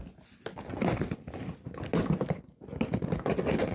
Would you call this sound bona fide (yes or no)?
yes